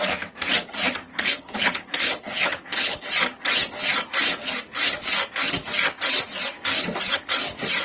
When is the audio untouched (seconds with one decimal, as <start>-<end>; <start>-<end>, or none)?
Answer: 0.0-1.1; 3.1-7.8

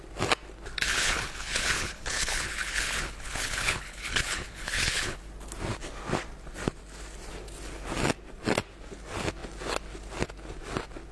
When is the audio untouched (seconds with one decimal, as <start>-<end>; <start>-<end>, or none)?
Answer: 0.0-0.9; 5.2-11.1

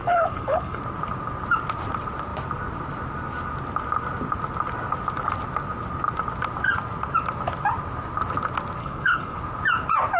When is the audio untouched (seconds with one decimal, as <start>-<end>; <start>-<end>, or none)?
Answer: 0.8-8.8; 9.4-10.2

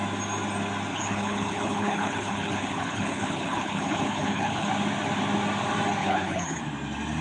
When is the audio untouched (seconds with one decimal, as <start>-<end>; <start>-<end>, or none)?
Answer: 0.0-0.9; 4.7-6.0; 6.6-7.2